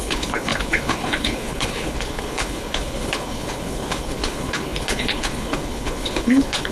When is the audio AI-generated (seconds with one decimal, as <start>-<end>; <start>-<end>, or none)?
0.0-6.7